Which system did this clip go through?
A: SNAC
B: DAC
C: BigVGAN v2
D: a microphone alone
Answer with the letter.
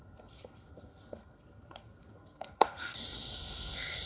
A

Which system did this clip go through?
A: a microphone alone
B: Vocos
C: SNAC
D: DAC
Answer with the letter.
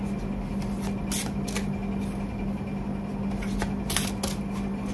A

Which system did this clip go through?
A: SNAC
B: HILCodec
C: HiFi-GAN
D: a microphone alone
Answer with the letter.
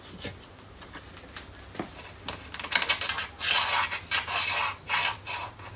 D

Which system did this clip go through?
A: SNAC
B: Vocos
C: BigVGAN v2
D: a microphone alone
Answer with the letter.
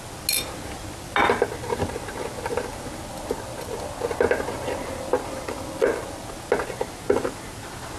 D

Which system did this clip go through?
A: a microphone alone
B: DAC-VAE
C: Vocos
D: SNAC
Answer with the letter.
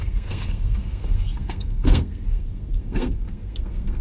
D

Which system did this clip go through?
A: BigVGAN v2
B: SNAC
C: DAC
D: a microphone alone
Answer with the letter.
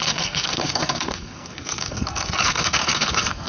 B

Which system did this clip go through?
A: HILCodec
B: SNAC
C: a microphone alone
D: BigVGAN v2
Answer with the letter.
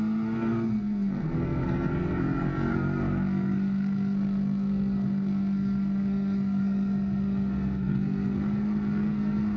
B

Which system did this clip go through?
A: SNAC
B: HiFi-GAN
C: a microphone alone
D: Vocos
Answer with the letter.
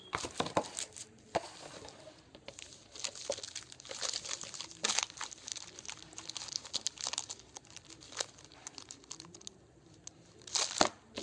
C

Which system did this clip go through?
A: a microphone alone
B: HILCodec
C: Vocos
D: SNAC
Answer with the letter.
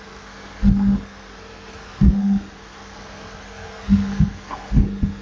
D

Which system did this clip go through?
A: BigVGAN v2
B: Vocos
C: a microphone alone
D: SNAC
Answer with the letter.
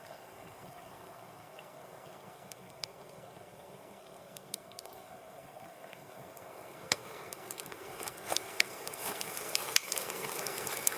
D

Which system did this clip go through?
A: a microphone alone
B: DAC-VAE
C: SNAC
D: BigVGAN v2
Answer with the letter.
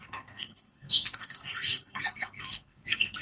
C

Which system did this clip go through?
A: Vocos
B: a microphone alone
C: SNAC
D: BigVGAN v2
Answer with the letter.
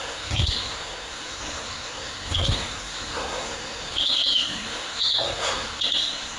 C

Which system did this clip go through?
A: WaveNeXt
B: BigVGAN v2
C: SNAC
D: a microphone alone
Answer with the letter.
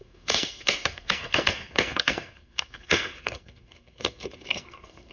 C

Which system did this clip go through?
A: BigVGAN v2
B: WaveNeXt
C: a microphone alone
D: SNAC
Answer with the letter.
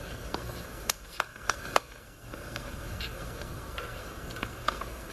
D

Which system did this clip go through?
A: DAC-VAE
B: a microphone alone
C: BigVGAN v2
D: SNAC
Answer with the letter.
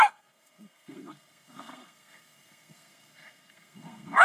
D